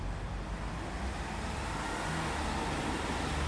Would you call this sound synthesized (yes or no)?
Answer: no